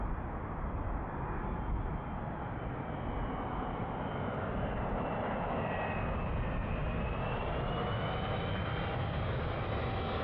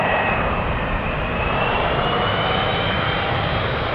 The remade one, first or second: second